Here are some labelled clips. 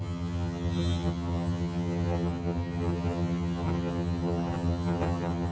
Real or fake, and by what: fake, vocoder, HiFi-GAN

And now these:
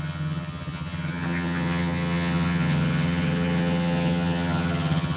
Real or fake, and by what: fake, vocoder, HiFi-GAN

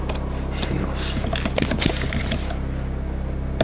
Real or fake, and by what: real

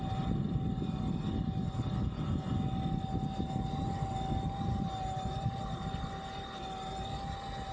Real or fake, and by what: real